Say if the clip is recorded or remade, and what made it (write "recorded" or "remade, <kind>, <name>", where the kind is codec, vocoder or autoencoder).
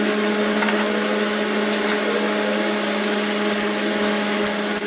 recorded